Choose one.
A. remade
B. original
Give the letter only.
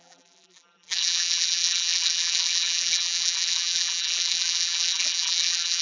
A